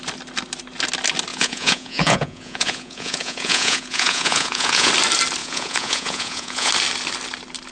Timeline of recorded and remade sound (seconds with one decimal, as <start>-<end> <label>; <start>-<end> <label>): 0.0-1.3 recorded; 1.3-4.9 remade; 4.9-5.4 recorded; 5.4-6.7 remade; 6.7-7.7 recorded